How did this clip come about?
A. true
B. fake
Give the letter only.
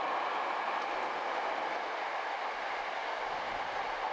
A